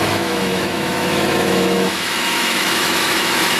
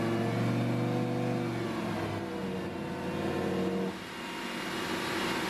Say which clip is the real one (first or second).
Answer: second